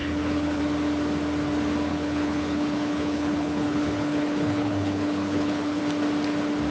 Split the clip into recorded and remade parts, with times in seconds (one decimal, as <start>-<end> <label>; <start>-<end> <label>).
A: 0.0-0.6 remade; 0.6-1.9 recorded; 1.9-5.8 remade; 5.8-6.7 recorded